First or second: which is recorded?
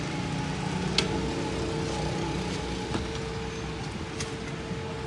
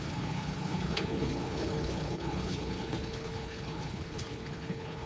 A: first